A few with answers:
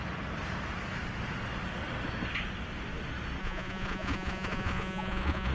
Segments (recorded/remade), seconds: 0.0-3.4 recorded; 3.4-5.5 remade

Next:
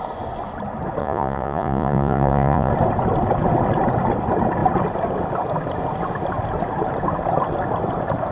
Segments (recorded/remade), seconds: 0.0-1.0 recorded; 1.0-2.7 remade; 2.7-8.3 recorded

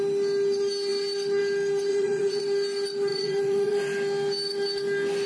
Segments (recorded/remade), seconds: 0.0-1.9 recorded; 1.9-2.4 remade; 2.4-3.1 recorded; 3.1-3.8 remade; 3.8-5.3 recorded

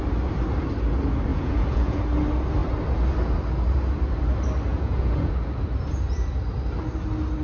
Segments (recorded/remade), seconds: 0.0-1.3 recorded; 1.3-2.0 remade; 2.0-4.7 recorded; 4.7-5.3 remade; 5.3-7.4 recorded